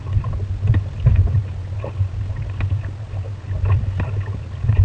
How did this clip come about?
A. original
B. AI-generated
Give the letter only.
A